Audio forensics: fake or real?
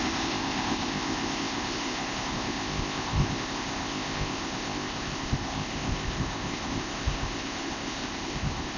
fake